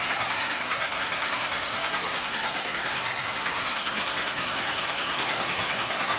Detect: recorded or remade remade